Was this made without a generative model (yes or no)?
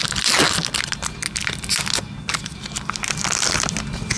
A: yes